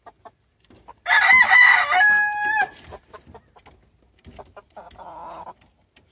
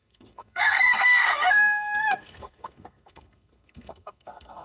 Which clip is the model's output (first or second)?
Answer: second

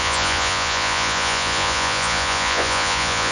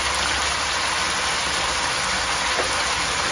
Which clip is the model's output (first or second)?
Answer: first